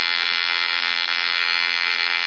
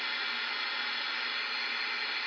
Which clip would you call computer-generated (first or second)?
first